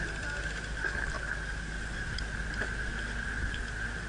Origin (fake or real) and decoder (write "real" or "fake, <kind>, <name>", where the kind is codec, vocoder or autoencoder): real